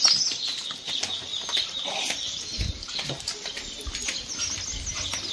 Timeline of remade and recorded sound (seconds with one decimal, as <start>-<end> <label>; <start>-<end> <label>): 0.0-5.3 recorded